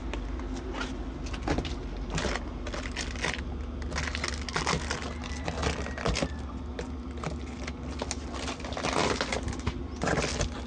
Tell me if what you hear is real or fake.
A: real